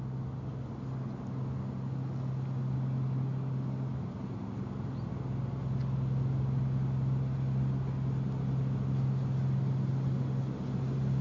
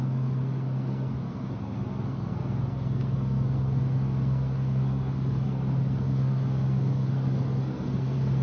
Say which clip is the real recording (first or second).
first